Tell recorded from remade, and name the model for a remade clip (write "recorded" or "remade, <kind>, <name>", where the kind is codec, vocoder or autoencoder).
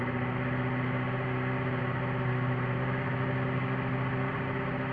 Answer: recorded